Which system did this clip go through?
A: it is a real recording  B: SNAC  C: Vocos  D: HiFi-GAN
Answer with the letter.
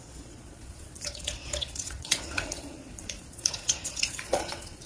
C